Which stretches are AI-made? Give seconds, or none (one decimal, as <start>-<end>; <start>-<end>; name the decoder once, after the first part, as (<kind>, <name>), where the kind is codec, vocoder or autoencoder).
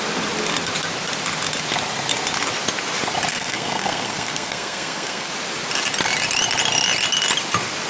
3.3-5.3 (codec, SNAC)